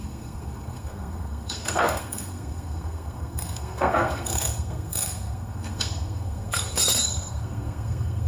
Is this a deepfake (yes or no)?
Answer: yes